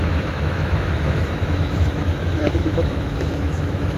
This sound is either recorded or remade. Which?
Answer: remade